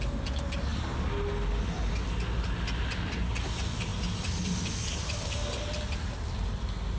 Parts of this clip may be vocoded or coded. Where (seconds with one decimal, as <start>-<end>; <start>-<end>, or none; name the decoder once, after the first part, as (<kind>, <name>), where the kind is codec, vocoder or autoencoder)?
none